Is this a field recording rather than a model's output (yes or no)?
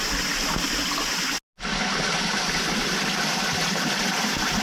yes